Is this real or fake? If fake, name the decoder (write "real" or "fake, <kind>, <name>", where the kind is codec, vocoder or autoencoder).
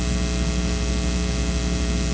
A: real